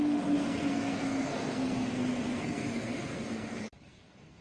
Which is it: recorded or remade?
remade